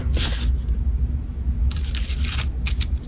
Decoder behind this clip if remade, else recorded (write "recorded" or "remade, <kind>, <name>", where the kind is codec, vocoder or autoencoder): recorded